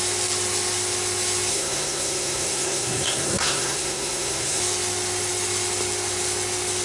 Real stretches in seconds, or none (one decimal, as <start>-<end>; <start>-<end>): 0.0-1.5; 4.6-6.8